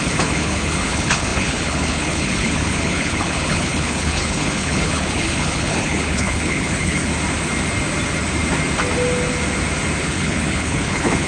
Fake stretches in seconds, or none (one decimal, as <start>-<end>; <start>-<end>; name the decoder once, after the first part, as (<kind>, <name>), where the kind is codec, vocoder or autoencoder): 0.0-7.1 (codec, HILCodec); 10.0-11.3